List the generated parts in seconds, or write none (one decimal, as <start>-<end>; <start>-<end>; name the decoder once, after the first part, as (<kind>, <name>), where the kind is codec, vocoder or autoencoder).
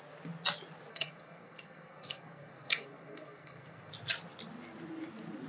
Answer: 0.9-3.9 (codec, SNAC)